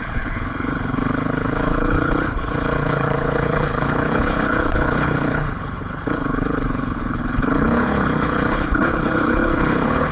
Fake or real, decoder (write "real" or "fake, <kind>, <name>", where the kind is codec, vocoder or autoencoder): fake, codec, HILCodec